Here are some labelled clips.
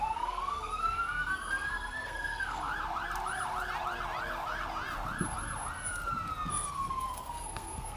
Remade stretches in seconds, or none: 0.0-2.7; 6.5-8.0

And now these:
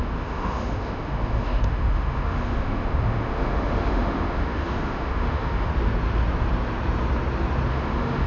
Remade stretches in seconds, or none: 0.0-5.7; 7.7-8.3

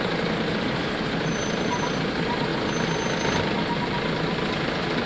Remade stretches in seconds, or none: 0.8-1.9

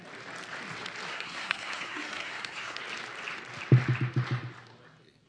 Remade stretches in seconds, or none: 1.1-2.8

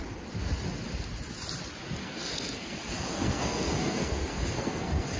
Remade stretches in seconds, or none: 2.0-5.2

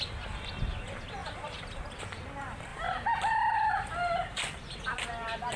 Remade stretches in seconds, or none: 1.2-2.0; 2.7-5.1